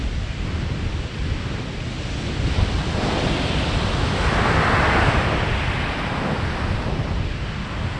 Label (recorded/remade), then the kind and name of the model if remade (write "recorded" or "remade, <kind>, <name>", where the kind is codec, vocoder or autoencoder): recorded